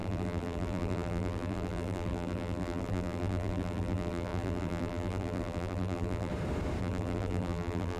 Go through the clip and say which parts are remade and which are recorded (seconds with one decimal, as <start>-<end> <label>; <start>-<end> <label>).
0.0-6.3 remade; 6.3-6.8 recorded; 6.8-8.0 remade

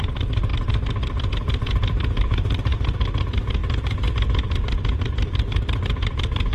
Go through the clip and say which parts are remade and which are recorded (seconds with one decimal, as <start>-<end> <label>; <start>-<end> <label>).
0.0-6.5 remade

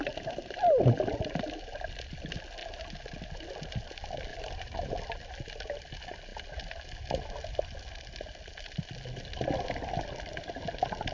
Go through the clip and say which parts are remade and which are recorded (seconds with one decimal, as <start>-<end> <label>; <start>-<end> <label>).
0.0-4.3 recorded; 4.3-5.0 remade; 5.0-11.1 recorded

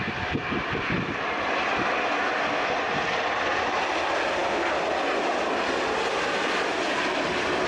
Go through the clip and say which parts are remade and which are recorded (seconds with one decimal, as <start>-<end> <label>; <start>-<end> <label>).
0.0-7.7 recorded

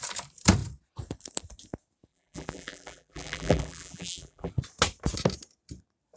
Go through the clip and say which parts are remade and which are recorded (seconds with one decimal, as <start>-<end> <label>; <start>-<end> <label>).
0.0-2.1 recorded; 2.1-4.5 remade; 4.5-6.2 recorded

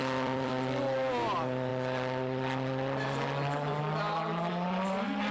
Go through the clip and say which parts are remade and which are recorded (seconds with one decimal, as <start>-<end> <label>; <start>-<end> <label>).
0.0-0.5 remade; 0.5-5.3 recorded